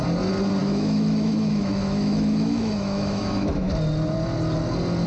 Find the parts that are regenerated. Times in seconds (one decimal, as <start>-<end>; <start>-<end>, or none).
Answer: 0.6-3.7